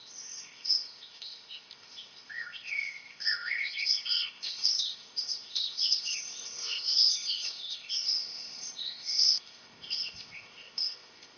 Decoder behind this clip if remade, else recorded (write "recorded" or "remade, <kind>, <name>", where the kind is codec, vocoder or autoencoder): remade, codec, ZipCodec